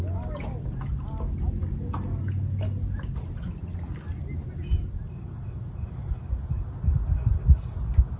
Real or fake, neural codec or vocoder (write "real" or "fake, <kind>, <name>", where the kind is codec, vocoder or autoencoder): real